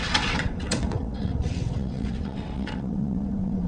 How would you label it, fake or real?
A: fake